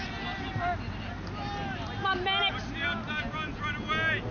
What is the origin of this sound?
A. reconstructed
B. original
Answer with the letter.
B